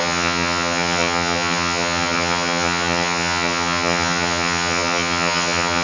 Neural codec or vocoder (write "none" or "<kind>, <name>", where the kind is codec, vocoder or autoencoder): vocoder, HiFi-GAN